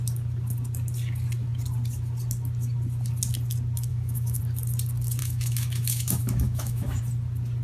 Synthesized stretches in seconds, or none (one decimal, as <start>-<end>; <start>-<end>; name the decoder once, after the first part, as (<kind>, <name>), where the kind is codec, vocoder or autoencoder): 3.9-4.4 (autoencoder, DAC-VAE); 5.2-7.0